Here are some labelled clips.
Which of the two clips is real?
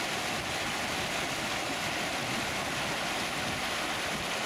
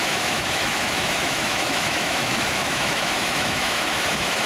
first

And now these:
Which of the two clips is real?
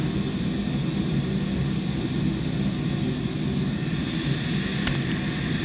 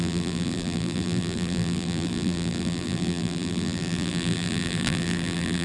first